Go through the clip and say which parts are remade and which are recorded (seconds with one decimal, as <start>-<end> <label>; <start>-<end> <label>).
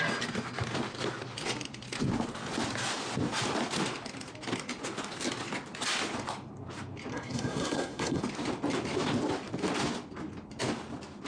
0.0-7.1 recorded; 7.1-8.2 remade; 8.2-11.3 recorded